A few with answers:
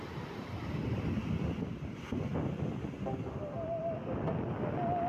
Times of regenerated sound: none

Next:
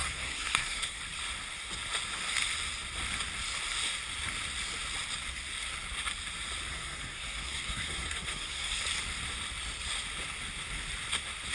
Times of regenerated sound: 0.0-1.0 (codec, SNAC); 6.7-8.8

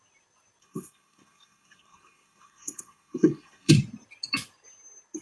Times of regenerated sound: 0.6-3.7 (codec, SNAC)

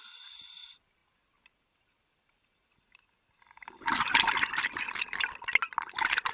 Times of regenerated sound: none

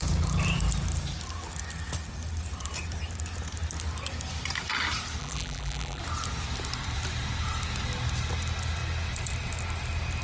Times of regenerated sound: 5.2-6.0 (vocoder, BigVGAN v2)

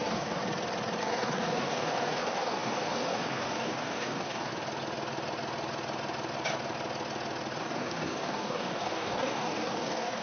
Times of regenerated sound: 0.0-0.4 (codec, DAC); 1.0-4.5; 7.6-10.2